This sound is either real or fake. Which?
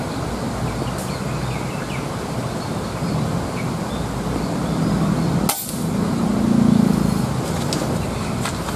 real